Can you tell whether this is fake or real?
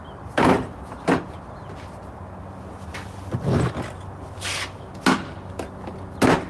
real